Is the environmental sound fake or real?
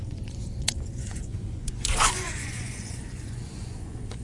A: fake